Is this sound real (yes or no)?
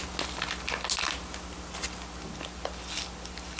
yes